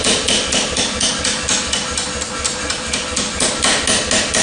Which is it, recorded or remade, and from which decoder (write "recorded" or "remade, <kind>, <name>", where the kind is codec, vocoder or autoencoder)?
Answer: recorded